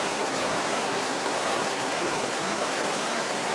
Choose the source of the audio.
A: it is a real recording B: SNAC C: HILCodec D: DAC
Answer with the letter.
B